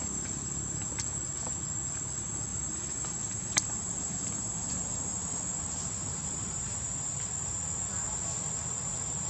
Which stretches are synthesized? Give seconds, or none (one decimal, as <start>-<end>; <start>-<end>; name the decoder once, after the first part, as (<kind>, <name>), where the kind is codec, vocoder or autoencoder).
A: 0.0-0.9 (vocoder, BigVGAN v2); 2.5-6.7